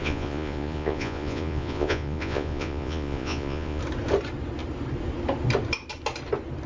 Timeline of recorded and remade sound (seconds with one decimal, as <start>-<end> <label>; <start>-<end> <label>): 0.0-3.8 remade; 3.8-6.7 recorded

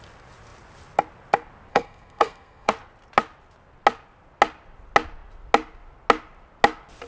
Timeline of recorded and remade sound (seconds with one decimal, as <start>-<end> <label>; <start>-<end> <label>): 0.0-1.7 recorded; 1.7-2.7 remade; 2.7-7.1 recorded

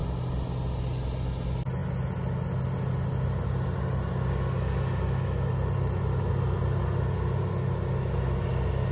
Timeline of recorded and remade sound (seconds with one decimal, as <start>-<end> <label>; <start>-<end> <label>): 0.0-8.9 recorded

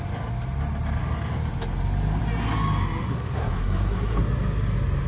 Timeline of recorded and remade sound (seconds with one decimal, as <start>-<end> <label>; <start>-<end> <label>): 0.0-3.1 recorded; 3.1-4.2 remade; 4.2-5.1 recorded